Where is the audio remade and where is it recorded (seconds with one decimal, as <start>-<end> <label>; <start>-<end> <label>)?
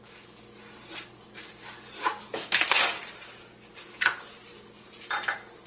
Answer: 0.0-2.3 recorded; 2.3-3.0 remade; 3.0-5.7 recorded